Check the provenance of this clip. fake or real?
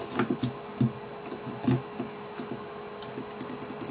real